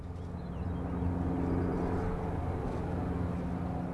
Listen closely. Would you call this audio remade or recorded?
recorded